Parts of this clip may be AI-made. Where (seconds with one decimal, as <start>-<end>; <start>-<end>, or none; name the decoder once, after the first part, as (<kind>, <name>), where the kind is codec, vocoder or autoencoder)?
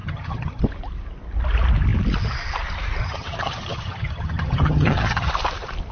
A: 0.0-0.6 (vocoder, HiFi-GAN); 3.0-5.3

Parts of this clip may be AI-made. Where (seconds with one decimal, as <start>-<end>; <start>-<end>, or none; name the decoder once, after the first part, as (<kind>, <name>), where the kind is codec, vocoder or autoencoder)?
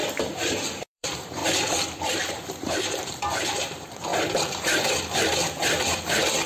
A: 0.8-1.4 (vocoder, BigVGAN v2); 2.0-4.1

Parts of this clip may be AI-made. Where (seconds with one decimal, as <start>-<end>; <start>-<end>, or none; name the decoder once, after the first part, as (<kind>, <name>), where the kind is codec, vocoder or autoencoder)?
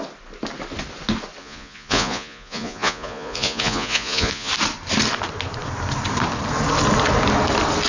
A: 1.4-4.5 (vocoder, Vocos)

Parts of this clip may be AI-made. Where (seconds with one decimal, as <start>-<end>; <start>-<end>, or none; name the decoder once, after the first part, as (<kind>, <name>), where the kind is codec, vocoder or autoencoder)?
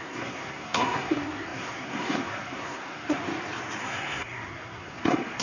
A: 0.0-3.2 (codec, SNAC); 3.8-5.4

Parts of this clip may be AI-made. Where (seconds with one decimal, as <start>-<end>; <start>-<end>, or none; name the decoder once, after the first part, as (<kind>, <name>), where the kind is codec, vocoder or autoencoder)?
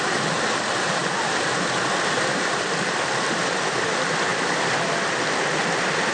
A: 1.0-1.6 (vocoder, BigVGAN v2)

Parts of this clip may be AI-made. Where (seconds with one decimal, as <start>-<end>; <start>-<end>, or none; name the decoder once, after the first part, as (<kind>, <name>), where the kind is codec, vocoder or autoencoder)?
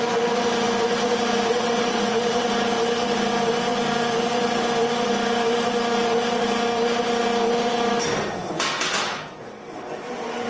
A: 1.5-2.3 (vocoder, WaveNeXt)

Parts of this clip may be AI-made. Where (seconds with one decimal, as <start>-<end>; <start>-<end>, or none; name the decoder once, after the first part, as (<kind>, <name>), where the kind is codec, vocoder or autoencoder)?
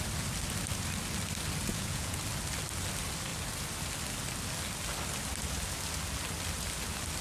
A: 1.7-2.2 (vocoder, Vocos)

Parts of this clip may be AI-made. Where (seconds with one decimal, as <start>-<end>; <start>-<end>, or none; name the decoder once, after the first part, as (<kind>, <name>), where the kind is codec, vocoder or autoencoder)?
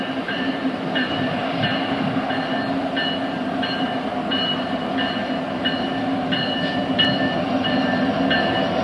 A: 0.0-1.4 (vocoder, BigVGAN v2); 3.5-4.1; 8.4-8.8